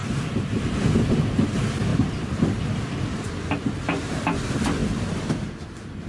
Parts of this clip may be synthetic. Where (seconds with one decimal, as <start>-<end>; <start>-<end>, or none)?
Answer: 0.0-0.7; 1.9-3.0; 4.8-5.5